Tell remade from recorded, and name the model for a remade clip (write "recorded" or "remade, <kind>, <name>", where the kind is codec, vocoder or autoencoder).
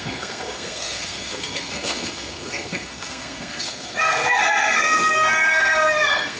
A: remade, codec, SNAC